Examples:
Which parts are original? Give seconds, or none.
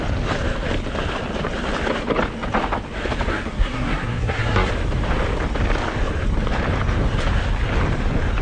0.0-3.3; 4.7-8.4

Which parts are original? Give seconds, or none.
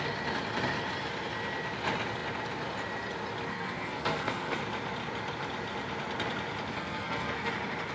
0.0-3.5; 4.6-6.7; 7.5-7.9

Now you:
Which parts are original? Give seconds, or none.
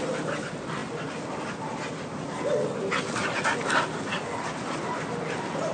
0.0-5.7